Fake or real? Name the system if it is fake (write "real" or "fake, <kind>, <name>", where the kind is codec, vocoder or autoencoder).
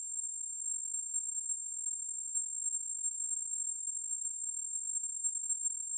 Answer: fake, vocoder, BigVGAN v2